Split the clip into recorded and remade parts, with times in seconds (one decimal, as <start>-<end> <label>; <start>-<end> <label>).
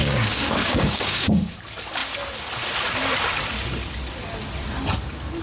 0.0-1.5 remade; 1.5-5.4 recorded